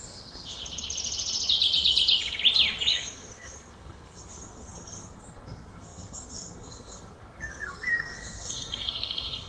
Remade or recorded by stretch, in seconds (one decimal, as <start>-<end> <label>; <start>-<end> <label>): 0.0-0.6 remade; 0.6-2.9 recorded; 2.9-9.5 remade